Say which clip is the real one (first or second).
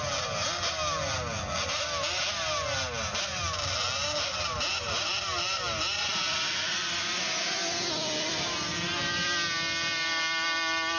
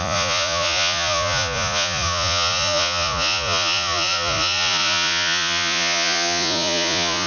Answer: first